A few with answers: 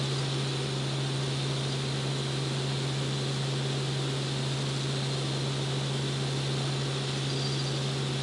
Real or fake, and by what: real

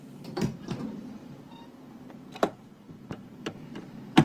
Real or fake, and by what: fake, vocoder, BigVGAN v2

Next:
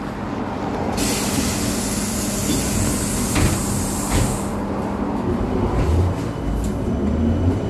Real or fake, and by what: real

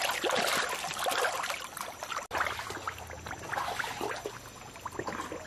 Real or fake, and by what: real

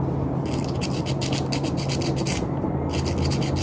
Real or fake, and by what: real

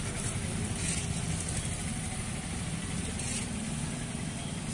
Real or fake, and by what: real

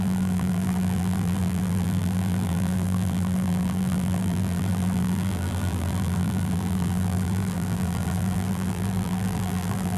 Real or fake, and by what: fake, vocoder, BigVGAN v2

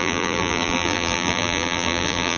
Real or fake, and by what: fake, vocoder, BigVGAN v2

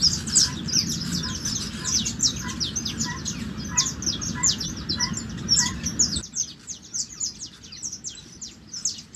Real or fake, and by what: real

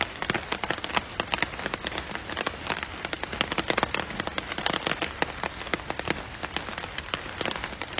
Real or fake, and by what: real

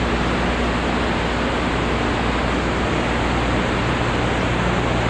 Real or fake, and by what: real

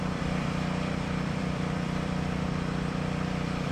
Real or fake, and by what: fake, vocoder, BigVGAN v2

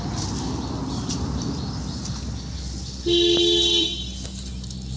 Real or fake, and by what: real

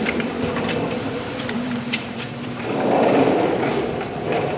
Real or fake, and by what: fake, vocoder, BigVGAN v2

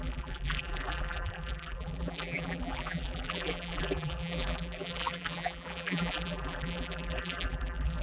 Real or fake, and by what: fake, vocoder, BigVGAN v2